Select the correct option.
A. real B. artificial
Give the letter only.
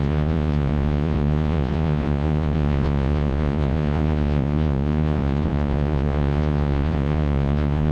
B